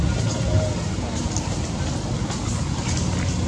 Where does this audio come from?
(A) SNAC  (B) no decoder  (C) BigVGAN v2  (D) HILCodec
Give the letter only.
B